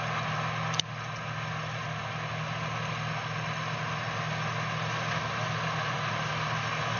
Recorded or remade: recorded